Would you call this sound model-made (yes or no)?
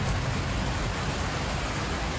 no